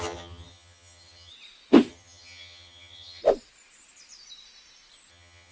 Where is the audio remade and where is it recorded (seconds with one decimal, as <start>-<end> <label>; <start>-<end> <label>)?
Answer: 0.0-1.3 remade; 1.3-1.9 recorded; 1.9-3.2 remade; 3.2-5.1 recorded; 5.1-5.5 remade